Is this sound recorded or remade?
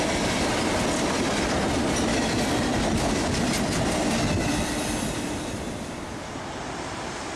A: recorded